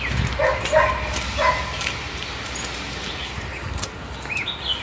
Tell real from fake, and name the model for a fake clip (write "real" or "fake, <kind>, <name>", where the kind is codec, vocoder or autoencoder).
real